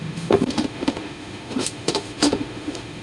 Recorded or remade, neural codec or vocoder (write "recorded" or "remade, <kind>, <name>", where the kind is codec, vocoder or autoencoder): remade, autoencoder, DAC-VAE